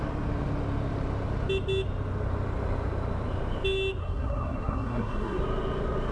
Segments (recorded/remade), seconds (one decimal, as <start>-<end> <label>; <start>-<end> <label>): 0.0-4.0 recorded; 4.0-5.4 remade; 5.4-6.1 recorded